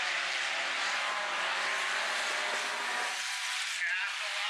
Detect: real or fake real